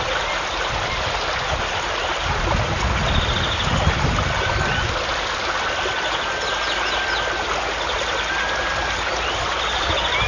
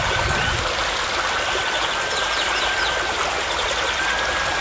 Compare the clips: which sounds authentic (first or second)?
first